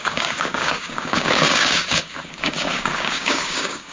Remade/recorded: remade